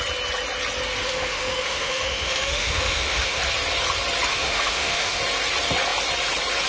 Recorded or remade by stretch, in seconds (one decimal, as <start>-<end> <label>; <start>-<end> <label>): 0.0-1.0 recorded; 1.0-3.4 remade; 3.4-4.3 recorded; 4.3-5.2 remade; 5.2-6.7 recorded